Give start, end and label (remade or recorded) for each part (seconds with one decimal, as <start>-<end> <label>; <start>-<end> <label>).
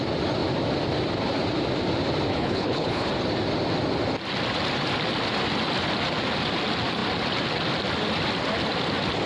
0.0-2.3 recorded; 2.3-3.1 remade; 3.1-9.3 recorded